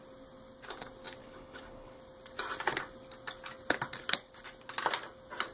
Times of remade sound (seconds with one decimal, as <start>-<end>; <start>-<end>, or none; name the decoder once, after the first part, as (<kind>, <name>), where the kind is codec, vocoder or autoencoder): 1.2-2.0 (codec, HILCodec)